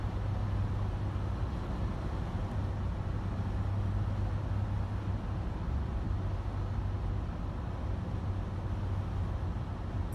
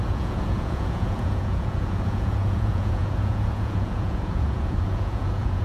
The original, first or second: first